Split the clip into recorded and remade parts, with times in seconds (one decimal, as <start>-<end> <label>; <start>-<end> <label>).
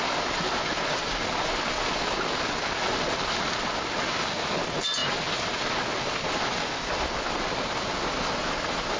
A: 0.0-9.0 recorded